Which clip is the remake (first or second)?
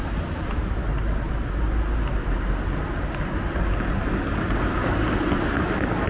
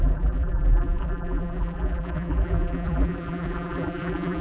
second